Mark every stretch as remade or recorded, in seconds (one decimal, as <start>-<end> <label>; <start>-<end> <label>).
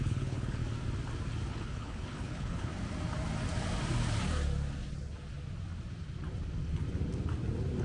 0.0-0.6 remade; 0.6-1.5 recorded; 1.5-2.7 remade; 2.7-7.8 recorded